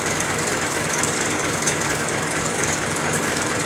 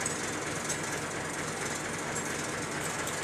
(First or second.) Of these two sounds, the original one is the second